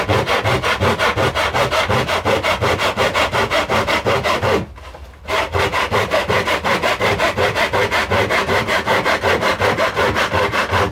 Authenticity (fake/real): real